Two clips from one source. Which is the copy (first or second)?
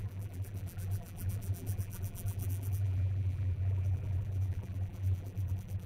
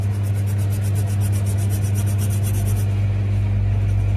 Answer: first